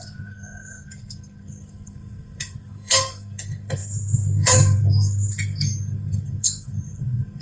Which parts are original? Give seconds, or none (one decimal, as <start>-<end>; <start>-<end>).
none